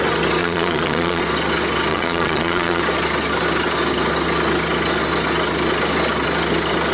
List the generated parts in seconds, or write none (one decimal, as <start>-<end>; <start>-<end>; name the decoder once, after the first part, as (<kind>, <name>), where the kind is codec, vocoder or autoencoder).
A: 0.4-1.2 (vocoder, Vocos); 1.9-2.8